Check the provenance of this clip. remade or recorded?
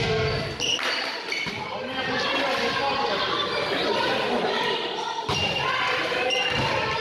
recorded